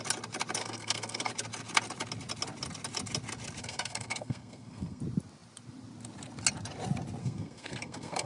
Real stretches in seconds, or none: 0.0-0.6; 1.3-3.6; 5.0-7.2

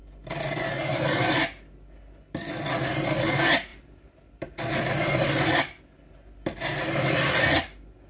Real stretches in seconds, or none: 0.0-3.7; 4.9-8.1

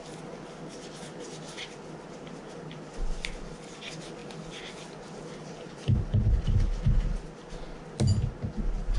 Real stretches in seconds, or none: 0.0-9.0

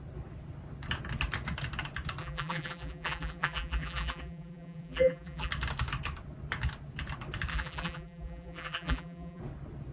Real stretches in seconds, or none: 0.0-2.2; 5.5-7.5; 9.4-9.9